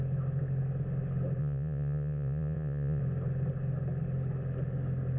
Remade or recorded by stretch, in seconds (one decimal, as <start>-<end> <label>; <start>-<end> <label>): 0.0-1.4 recorded; 1.4-3.0 remade; 3.0-5.2 recorded